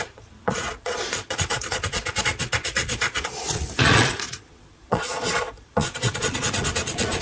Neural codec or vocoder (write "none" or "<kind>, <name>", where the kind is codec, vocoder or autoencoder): vocoder, Vocos